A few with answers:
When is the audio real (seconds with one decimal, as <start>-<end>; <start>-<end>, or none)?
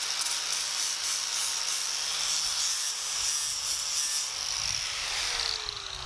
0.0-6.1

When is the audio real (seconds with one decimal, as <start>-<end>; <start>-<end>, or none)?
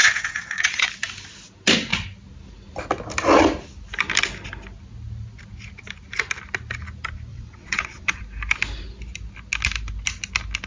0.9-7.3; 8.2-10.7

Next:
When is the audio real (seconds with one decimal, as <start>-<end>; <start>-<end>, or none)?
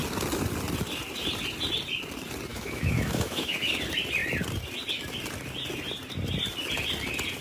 0.0-2.5; 3.7-7.4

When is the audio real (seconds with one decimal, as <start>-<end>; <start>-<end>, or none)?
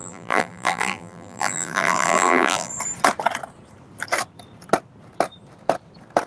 2.7-6.3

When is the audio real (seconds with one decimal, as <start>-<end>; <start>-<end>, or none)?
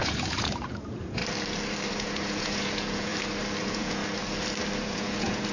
1.2-1.9; 3.1-3.6; 4.0-4.7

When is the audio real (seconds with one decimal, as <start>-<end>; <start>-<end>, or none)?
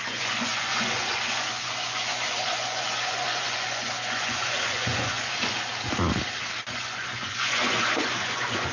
5.7-6.7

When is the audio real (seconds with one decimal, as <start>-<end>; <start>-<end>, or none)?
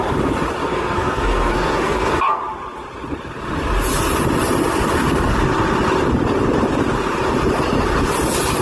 0.0-0.6; 2.4-8.6